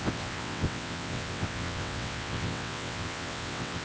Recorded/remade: remade